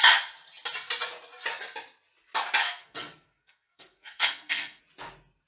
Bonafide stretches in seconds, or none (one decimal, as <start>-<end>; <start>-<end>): 0.0-2.6; 4.8-5.5